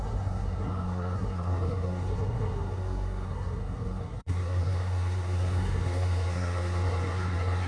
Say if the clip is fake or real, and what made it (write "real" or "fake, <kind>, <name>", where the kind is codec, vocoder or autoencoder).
fake, codec, SNAC